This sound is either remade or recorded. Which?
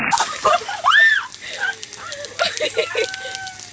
recorded